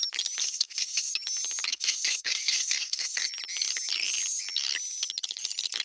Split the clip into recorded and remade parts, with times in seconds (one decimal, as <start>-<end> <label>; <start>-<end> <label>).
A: 0.0-0.4 recorded; 0.4-1.1 remade; 1.1-1.7 recorded; 1.7-3.2 remade; 3.2-5.8 recorded